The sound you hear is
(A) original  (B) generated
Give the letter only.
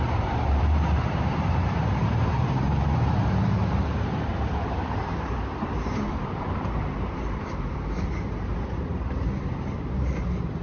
B